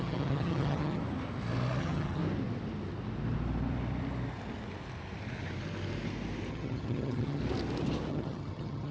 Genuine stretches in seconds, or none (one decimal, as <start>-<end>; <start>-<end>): 1.0-1.8; 2.2-6.5; 7.4-8.1